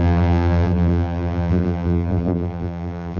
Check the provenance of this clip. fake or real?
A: fake